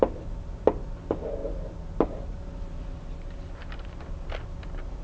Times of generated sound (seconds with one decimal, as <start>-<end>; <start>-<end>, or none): none